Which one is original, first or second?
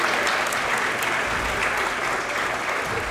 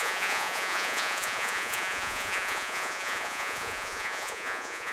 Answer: first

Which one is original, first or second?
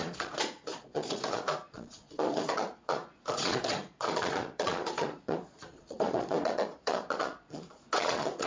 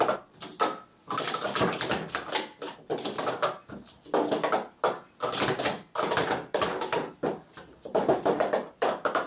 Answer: second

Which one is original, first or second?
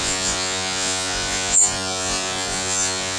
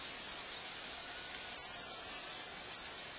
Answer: second